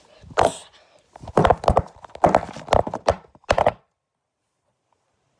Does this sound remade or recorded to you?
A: recorded